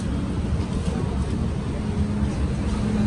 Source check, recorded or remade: recorded